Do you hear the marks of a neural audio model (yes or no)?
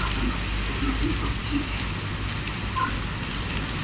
no